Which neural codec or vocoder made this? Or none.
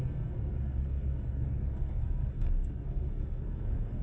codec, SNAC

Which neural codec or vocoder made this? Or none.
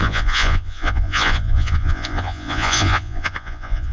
vocoder, Vocos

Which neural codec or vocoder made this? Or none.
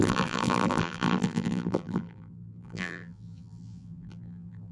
vocoder, BigVGAN v2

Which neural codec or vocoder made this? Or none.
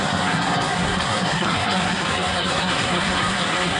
codec, SNAC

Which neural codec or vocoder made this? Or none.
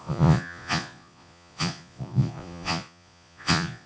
vocoder, Vocos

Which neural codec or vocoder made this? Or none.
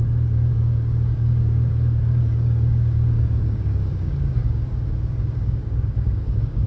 codec, DAC